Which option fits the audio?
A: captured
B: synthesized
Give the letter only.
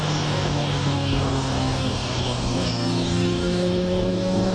B